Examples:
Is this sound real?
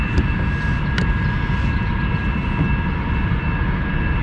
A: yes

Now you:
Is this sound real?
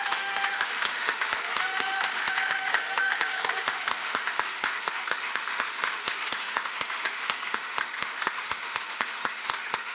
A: no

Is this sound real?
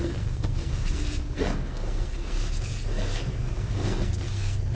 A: no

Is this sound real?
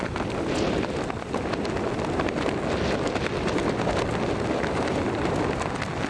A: yes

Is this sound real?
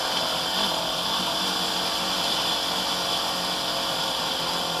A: yes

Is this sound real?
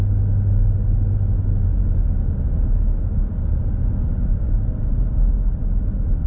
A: yes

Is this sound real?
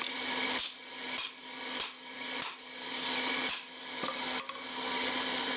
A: no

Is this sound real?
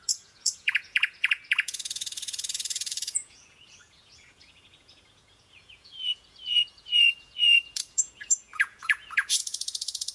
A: no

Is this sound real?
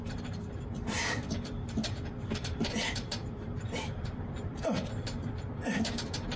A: no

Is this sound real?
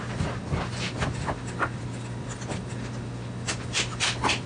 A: yes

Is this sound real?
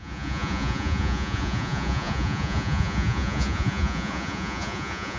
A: no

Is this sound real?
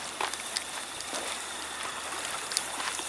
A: yes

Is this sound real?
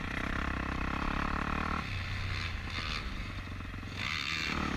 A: yes